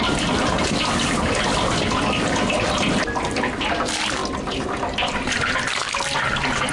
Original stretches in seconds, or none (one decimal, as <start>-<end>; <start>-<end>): 0.0-6.7